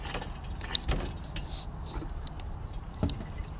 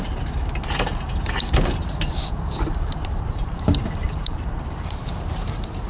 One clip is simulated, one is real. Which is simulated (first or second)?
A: second